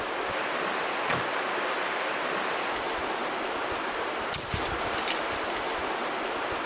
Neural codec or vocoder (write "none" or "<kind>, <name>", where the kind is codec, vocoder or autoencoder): none